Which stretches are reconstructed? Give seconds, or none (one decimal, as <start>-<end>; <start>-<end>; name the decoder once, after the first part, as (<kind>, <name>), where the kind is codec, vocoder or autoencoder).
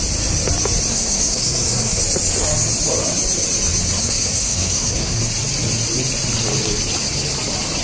0.9-2.0 (codec, SNAC); 4.0-5.2